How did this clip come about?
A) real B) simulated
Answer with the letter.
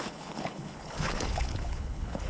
B